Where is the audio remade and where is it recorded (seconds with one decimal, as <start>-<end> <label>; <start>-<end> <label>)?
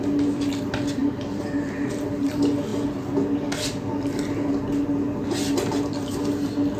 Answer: 0.0-1.0 recorded; 1.0-2.3 remade; 2.3-6.8 recorded